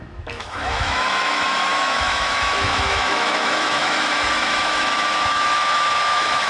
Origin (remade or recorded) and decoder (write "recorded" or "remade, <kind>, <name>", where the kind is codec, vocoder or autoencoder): remade, autoencoder, DAC-VAE